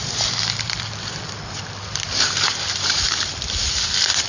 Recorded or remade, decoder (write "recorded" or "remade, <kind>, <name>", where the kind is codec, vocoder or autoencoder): remade, vocoder, BigVGAN v2